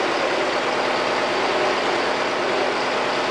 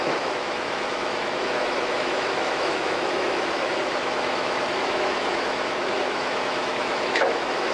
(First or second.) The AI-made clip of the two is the second